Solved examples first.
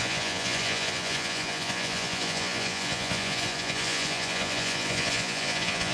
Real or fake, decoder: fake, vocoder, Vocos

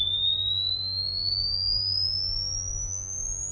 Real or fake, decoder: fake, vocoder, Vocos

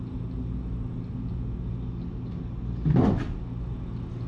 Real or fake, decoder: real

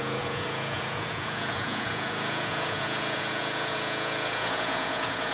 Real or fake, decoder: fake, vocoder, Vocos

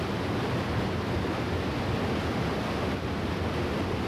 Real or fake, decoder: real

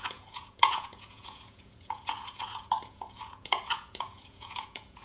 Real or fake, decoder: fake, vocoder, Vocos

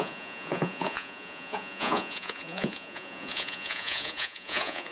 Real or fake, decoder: fake, vocoder, Vocos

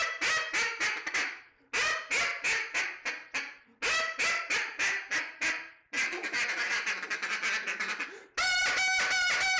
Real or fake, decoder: real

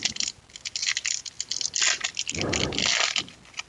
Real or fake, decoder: real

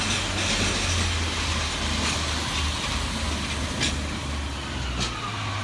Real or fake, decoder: real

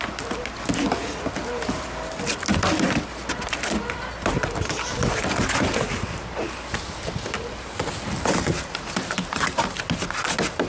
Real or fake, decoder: real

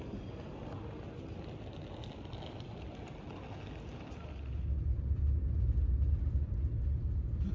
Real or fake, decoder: real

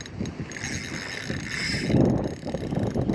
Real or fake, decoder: real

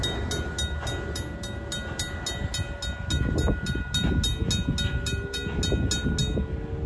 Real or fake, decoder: real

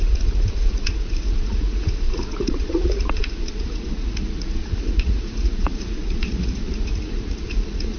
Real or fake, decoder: fake, vocoder, Vocos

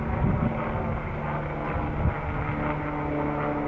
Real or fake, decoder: real